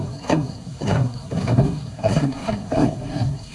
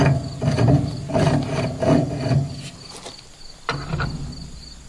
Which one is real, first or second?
second